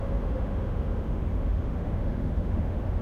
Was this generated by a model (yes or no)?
yes